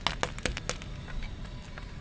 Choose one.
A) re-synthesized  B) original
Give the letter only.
B